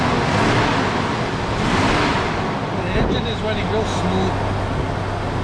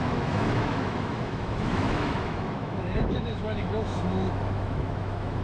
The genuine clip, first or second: first